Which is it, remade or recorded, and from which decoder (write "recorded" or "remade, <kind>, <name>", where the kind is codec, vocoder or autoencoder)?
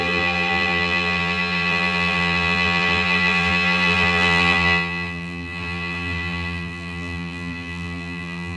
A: remade, vocoder, BigVGAN v2